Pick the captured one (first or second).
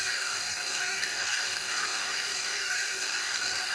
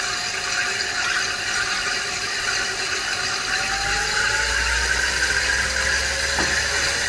second